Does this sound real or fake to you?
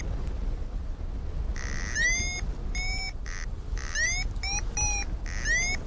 real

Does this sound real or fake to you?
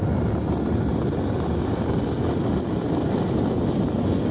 real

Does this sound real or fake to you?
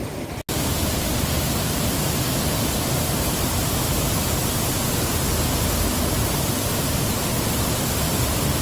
real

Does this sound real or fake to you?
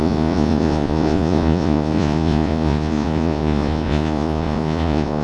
fake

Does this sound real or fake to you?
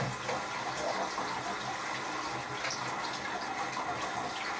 real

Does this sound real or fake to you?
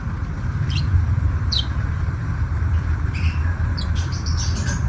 fake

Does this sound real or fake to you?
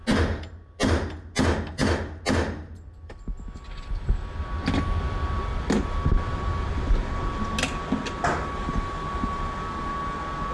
real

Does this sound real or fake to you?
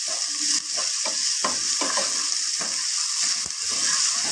real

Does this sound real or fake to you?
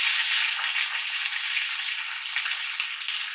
real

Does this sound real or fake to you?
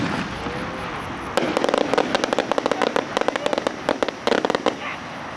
real